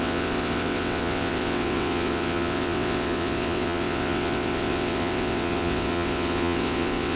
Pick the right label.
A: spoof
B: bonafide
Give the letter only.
A